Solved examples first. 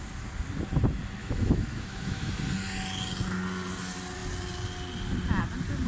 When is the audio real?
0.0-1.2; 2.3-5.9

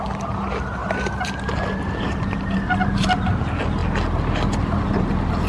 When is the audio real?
0.0-5.5

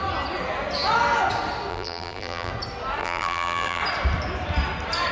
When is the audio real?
0.0-1.7; 2.5-3.0; 3.8-5.1

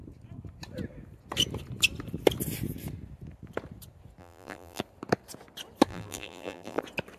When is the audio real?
0.0-4.2; 4.8-5.9; 6.8-7.2

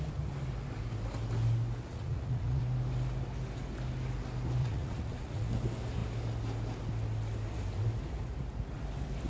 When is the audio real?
0.0-1.9; 2.6-4.6; 5.5-9.3